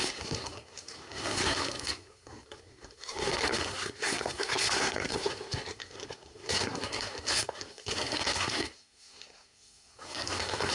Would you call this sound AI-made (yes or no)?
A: yes